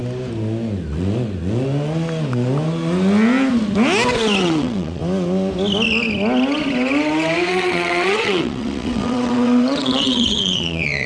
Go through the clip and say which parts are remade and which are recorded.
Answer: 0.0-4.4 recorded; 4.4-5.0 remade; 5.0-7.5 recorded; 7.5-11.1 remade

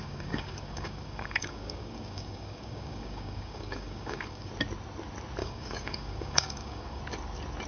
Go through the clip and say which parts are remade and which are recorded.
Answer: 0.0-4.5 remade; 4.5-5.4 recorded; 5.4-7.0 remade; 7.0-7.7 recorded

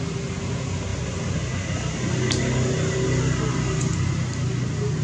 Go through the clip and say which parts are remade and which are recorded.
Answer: 0.0-5.0 recorded